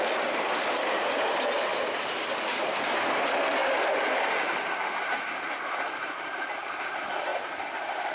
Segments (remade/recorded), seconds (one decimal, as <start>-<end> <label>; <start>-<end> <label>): 0.0-1.7 remade; 1.7-2.3 recorded; 2.3-3.6 remade; 3.6-5.7 recorded; 5.7-7.3 remade; 7.3-8.1 recorded